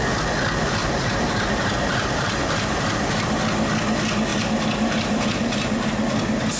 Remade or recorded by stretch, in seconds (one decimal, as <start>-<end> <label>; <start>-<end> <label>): 0.0-0.8 recorded; 0.8-3.4 remade; 3.4-4.3 recorded; 4.3-5.9 remade; 5.9-6.6 recorded